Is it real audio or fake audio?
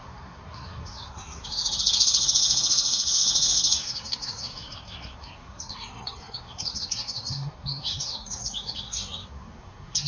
fake